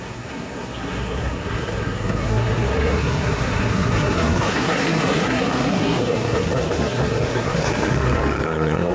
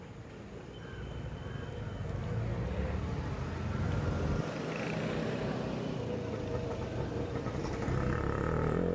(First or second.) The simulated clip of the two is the first